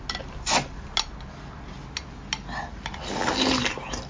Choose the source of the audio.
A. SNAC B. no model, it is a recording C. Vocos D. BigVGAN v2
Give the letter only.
B